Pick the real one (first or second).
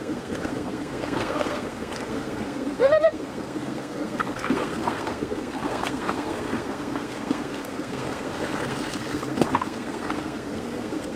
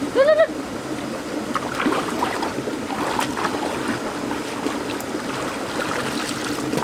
second